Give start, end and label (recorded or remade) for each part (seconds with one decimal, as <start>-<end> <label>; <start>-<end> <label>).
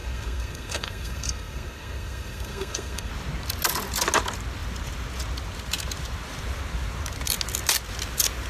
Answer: 0.0-3.1 remade; 3.1-8.5 recorded